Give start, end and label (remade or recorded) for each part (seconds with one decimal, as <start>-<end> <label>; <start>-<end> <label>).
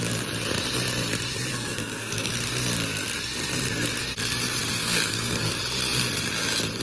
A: 0.0-1.5 recorded; 1.5-2.3 remade; 2.3-4.8 recorded; 4.8-5.5 remade; 5.5-6.8 recorded